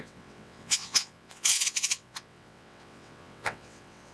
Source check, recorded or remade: remade